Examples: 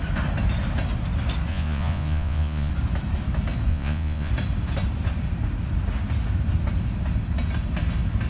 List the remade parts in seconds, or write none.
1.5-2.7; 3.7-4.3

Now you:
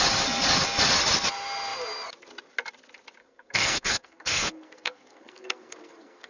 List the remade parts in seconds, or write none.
3.2-6.3